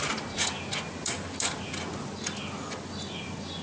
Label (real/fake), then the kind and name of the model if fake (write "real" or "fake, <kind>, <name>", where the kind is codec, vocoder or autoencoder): real